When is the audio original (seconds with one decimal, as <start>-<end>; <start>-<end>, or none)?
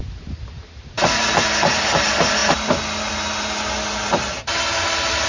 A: 1.4-5.3